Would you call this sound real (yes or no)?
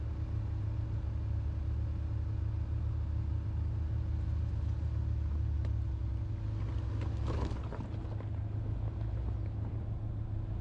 yes